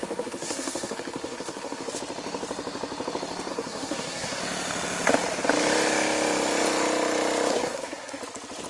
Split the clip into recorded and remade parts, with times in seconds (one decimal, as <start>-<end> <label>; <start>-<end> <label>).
0.0-1.9 remade; 1.9-3.5 recorded; 3.5-4.4 remade; 4.4-7.5 recorded; 7.5-8.2 remade; 8.2-8.7 recorded